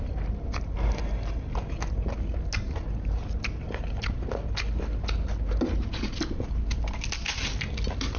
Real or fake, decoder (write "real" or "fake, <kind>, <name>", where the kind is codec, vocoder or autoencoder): real